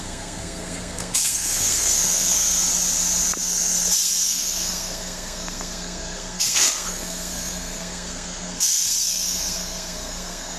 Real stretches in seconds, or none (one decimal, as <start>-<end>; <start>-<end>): 2.6-3.4